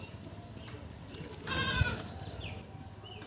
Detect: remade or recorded recorded